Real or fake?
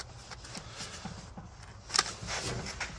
real